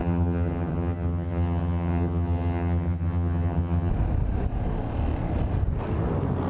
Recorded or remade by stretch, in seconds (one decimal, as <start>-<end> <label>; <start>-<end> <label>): 0.0-3.9 remade; 3.9-6.5 recorded